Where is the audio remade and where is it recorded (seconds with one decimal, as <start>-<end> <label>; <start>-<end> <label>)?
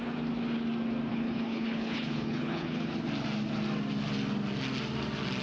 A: 0.0-1.1 recorded; 1.1-2.9 remade; 2.9-5.4 recorded